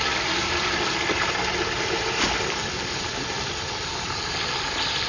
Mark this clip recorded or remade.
recorded